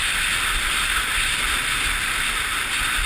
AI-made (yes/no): no